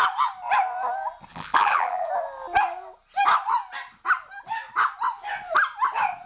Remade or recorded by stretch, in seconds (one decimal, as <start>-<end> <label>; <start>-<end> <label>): 0.0-1.3 recorded; 1.3-2.1 remade; 2.1-6.3 recorded